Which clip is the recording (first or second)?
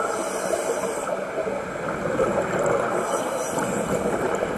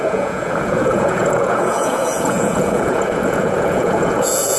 first